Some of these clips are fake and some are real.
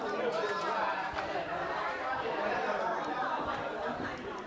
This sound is fake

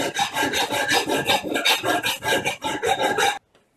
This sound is real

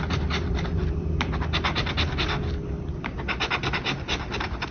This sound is real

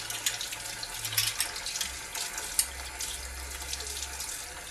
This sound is real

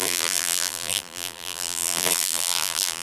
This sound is fake